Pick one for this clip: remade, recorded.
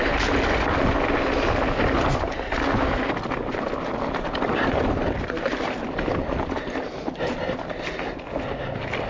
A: recorded